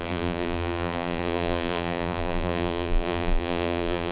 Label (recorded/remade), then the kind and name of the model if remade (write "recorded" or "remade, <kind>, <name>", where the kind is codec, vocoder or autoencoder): remade, vocoder, BigVGAN v2